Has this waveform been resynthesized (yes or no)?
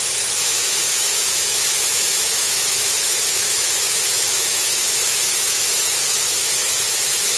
yes